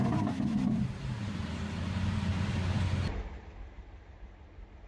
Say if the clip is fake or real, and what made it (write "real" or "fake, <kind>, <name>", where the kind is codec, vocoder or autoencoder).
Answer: real